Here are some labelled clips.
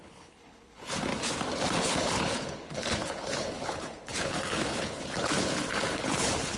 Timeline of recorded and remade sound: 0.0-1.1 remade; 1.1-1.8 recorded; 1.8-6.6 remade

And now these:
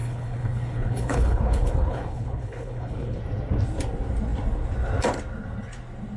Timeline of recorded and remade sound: 0.0-3.2 remade; 3.2-6.2 recorded

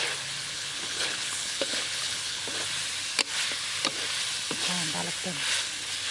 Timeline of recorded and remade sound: 0.0-0.4 recorded; 0.4-2.4 remade; 2.4-6.1 recorded

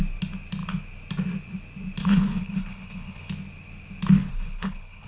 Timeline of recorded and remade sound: 0.0-2.0 recorded; 2.0-3.3 remade; 3.3-4.2 recorded; 4.2-5.1 remade

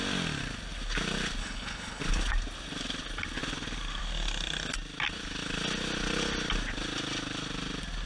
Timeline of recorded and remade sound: 0.0-1.4 recorded; 1.4-2.0 remade; 2.0-8.1 recorded

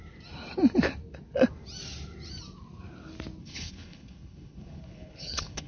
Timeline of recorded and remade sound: 0.0-3.4 recorded; 3.4-5.7 remade

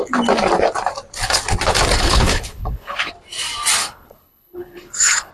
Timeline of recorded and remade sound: 0.0-1.9 recorded; 1.9-3.1 remade; 3.1-3.8 recorded; 3.8-5.3 remade